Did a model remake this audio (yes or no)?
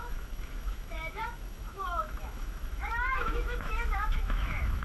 yes